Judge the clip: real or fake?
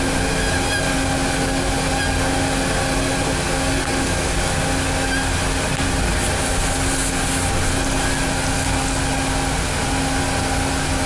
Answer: real